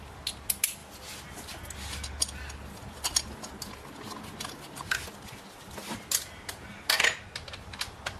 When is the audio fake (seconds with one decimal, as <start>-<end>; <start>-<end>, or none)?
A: none